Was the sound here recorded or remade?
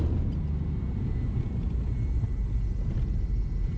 remade